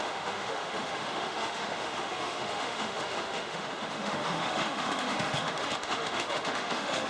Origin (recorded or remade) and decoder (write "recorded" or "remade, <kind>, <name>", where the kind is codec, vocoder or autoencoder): remade, autoencoder, DAC-VAE